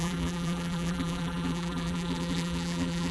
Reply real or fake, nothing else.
fake